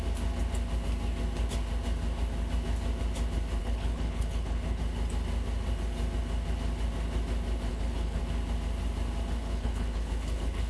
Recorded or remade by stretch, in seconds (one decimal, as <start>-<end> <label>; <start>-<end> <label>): 0.0-3.6 recorded; 3.6-4.8 remade; 4.8-7.7 recorded; 7.7-8.2 remade; 8.2-9.4 recorded; 9.4-10.7 remade